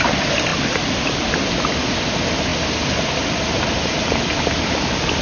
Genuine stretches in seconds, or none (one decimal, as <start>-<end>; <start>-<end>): 0.0-5.2